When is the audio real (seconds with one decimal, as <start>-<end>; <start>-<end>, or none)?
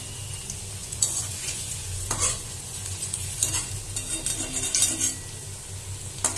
0.0-0.8; 3.7-6.4